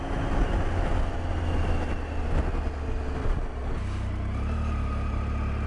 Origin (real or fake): real